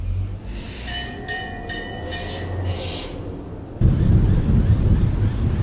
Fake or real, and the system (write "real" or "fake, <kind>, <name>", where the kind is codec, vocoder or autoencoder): real